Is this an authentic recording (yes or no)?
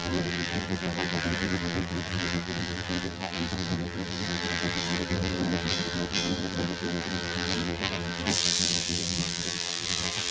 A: no